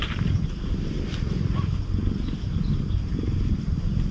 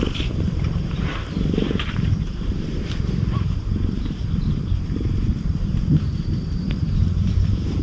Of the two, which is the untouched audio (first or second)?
first